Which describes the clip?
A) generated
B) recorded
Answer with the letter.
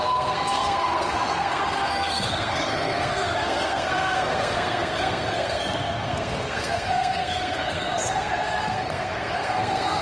A